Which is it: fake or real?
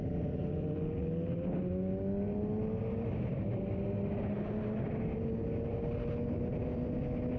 real